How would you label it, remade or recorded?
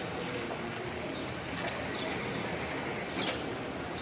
recorded